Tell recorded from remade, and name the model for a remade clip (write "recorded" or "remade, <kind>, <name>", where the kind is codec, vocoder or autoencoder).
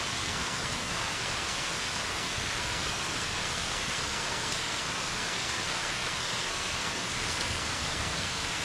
remade, codec, SNAC